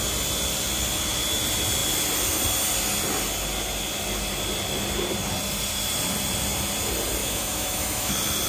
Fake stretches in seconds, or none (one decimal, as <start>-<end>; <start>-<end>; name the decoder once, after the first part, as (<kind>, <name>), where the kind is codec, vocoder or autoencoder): 7.2-8.1 (autoencoder, DAC-VAE)